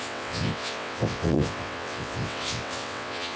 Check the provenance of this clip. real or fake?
fake